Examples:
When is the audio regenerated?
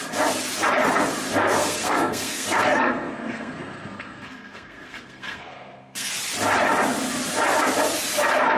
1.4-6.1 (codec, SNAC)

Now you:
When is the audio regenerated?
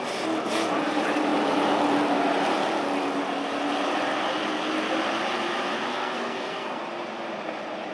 5.9-6.8 (codec, SNAC)